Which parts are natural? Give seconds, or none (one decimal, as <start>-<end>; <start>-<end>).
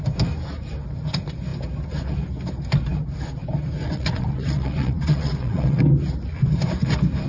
0.0-3.8; 5.8-7.3